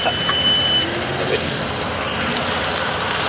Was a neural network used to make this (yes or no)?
no